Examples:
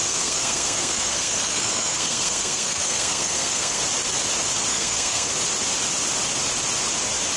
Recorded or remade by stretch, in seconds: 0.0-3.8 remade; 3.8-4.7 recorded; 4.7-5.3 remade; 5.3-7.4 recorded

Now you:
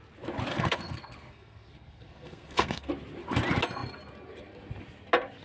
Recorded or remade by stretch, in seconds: 0.0-0.5 recorded; 0.5-2.9 remade; 2.9-5.4 recorded

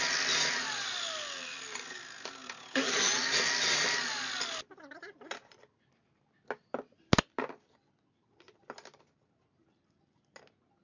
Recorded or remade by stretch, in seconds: 0.0-10.8 recorded

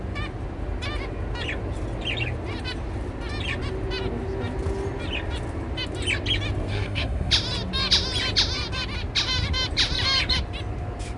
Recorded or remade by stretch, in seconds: 0.0-6.7 recorded; 6.7-7.3 remade; 7.3-11.2 recorded